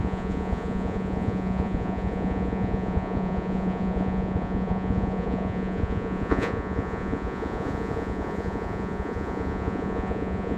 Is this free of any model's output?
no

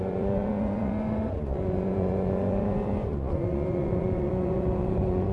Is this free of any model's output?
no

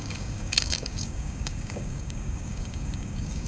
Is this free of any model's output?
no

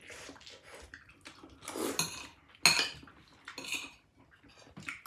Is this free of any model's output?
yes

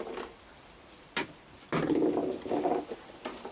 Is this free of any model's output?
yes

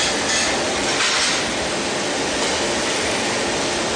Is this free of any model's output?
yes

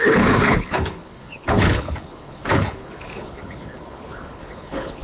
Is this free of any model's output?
no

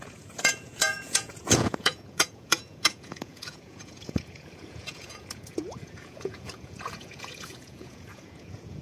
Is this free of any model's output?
no